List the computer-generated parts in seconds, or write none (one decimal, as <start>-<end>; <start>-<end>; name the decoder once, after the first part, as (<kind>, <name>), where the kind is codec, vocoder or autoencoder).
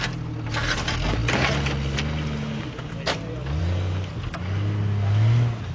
none